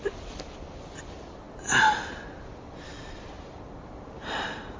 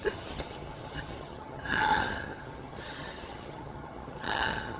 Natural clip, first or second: first